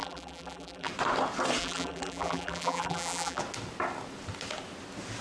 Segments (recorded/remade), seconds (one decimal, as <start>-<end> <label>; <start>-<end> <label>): 0.0-0.9 remade; 0.9-1.6 recorded; 1.6-3.4 remade; 3.4-5.2 recorded